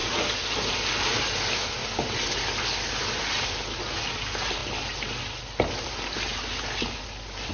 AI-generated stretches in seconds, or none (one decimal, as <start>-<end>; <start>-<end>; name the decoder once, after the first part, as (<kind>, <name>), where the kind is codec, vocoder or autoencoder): 1.8-2.6 (vocoder, BigVGAN v2)